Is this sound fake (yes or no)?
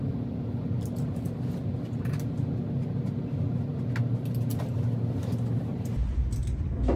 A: no